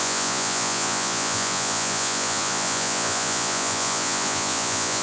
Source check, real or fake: fake